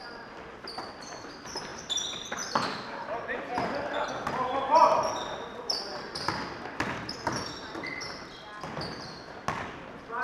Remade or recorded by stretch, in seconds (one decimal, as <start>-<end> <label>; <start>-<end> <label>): 0.0-1.7 recorded; 1.7-2.6 remade; 2.6-4.8 recorded; 4.8-7.6 remade; 7.6-10.2 recorded